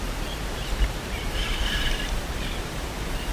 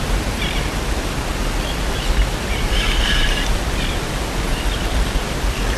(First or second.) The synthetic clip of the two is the first